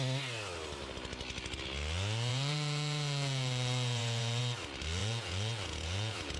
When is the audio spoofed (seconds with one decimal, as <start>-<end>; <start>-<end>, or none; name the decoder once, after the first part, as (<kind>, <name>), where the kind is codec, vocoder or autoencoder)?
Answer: 2.3-4.4 (vocoder, Vocos); 5.0-6.4